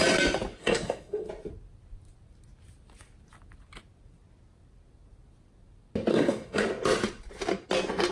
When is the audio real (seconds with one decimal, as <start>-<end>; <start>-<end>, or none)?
0.0-0.6; 1.3-6.1; 6.6-8.1

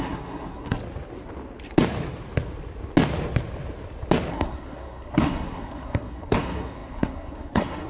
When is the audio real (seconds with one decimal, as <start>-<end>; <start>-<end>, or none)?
0.8-4.3

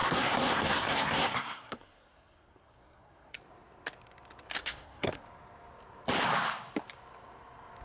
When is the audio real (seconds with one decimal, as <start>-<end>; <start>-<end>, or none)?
3.4-4.6; 5.2-7.8

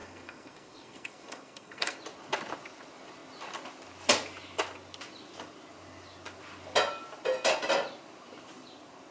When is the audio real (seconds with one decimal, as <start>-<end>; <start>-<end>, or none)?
2.0-9.1

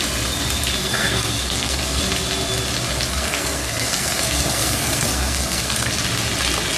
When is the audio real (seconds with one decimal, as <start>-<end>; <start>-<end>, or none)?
0.0-0.8; 2.0-3.1; 5.9-6.8